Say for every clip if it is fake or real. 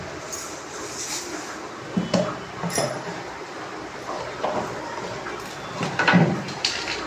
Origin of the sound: fake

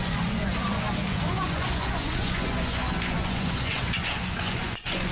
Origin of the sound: fake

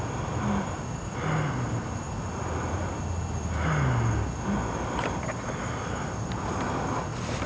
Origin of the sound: real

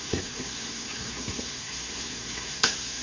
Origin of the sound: fake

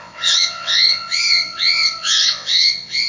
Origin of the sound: fake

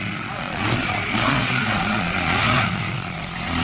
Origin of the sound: fake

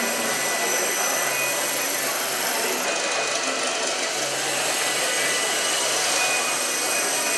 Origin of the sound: real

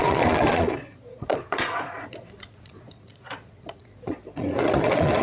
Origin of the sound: fake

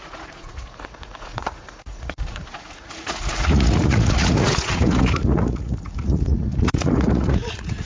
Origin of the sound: fake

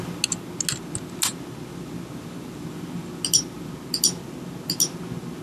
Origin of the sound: real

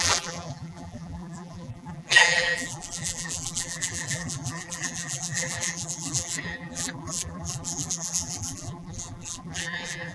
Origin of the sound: fake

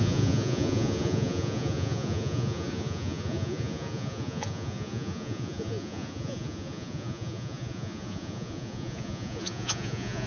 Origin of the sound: fake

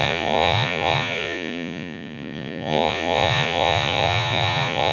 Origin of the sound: fake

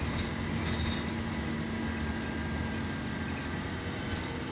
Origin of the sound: real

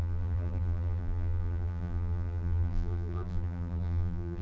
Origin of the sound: fake